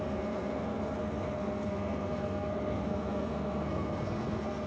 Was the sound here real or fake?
fake